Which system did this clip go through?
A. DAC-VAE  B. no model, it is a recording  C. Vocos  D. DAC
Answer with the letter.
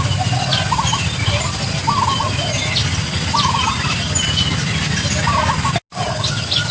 B